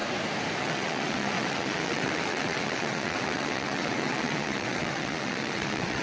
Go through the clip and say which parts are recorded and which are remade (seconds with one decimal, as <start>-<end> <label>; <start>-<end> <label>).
0.0-0.6 recorded; 0.6-6.0 remade